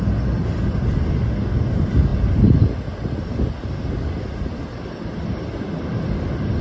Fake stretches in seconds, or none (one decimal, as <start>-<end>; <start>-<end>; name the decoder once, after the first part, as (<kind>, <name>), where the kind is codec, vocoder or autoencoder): none